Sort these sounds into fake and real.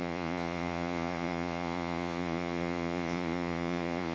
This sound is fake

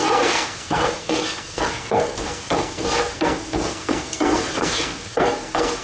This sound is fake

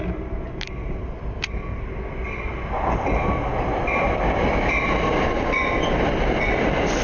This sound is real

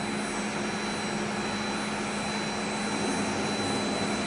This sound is real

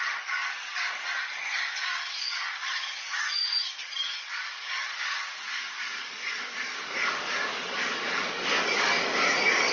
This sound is fake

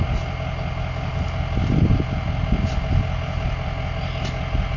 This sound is real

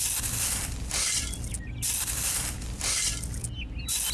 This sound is real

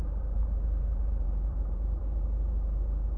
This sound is fake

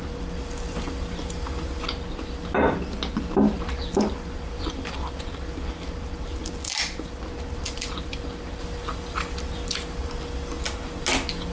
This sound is real